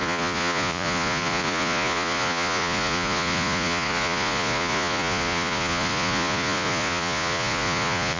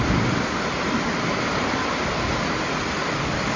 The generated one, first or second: first